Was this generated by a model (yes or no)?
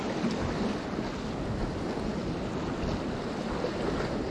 no